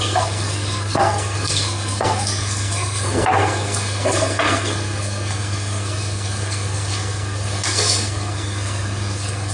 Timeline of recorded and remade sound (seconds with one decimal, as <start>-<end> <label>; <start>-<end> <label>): 0.0-9.5 remade